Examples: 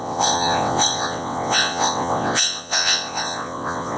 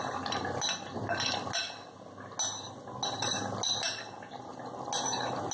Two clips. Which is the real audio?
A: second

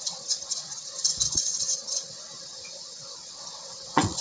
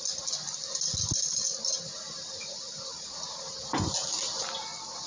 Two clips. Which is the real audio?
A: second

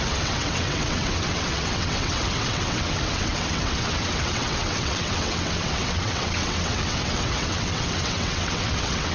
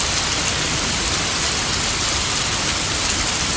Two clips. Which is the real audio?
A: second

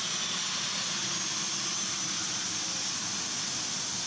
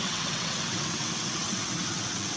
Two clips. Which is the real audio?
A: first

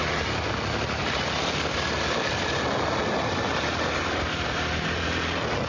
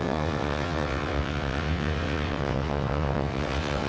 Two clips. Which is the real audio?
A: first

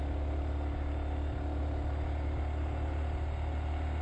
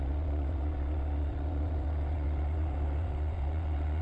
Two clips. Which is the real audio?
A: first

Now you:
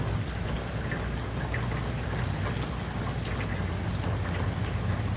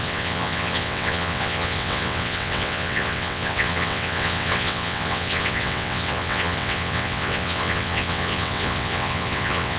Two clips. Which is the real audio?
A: first